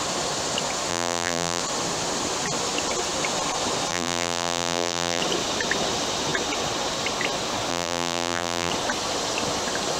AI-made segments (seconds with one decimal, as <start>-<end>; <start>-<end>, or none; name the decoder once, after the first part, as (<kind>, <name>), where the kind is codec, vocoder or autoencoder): 0.9-1.6 (vocoder, BigVGAN v2); 3.9-5.2; 7.7-8.7